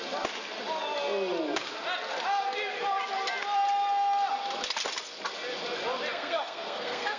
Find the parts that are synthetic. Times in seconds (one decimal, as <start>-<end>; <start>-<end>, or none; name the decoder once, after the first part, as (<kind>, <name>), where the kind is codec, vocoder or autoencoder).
6.1-7.2 (codec, SNAC)

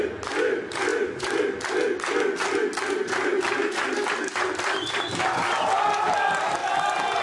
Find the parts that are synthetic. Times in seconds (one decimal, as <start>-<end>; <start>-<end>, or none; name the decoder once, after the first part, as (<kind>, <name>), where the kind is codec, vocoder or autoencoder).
none

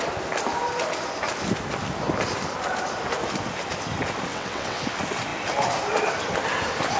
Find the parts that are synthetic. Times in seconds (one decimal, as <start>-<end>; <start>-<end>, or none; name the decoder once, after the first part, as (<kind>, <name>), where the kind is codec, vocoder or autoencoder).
4.3-4.8 (vocoder, WaveNeXt)

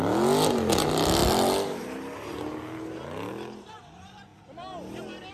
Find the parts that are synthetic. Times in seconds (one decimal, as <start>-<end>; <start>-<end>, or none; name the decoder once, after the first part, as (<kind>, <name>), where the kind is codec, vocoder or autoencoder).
none

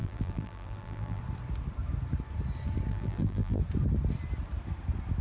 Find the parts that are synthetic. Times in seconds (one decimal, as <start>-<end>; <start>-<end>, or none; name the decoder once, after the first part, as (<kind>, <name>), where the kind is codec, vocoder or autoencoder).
0.0-1.2 (vocoder, BigVGAN v2); 2.9-3.6